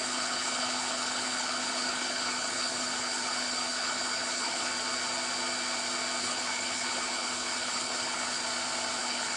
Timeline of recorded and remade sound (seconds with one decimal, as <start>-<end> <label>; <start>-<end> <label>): 0.0-4.7 remade; 4.7-6.2 recorded; 6.2-8.4 remade; 8.4-9.0 recorded; 9.0-9.4 remade